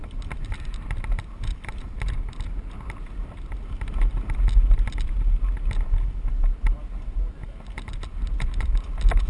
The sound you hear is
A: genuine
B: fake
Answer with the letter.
A